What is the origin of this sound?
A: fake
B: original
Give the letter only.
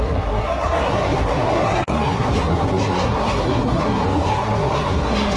A